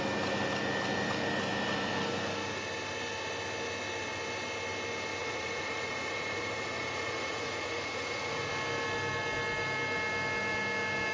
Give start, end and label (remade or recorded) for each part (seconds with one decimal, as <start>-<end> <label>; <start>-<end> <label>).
0.0-5.2 recorded; 5.2-8.5 remade; 8.5-11.1 recorded